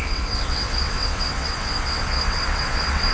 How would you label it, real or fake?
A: fake